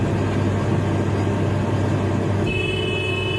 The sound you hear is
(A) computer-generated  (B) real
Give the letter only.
B